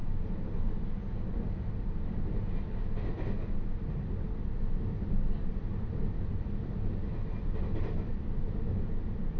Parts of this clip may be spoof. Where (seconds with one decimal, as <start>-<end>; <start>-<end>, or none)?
none